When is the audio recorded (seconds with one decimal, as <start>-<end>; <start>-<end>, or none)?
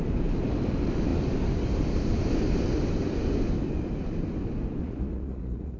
0.0-4.8